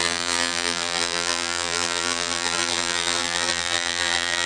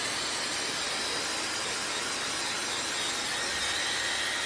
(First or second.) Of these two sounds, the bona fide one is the second